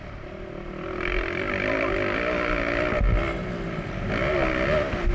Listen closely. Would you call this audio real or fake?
real